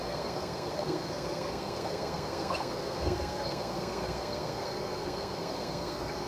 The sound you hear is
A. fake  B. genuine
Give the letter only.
A